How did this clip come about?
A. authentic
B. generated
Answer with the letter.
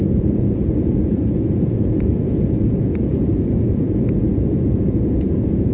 B